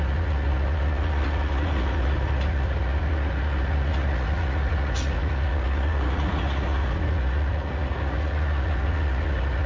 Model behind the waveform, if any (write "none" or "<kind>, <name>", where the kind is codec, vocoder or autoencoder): vocoder, Vocos